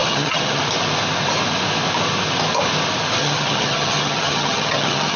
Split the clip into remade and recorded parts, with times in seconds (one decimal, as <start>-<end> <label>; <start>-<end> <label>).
0.0-0.6 remade; 0.6-3.2 recorded; 3.2-5.2 remade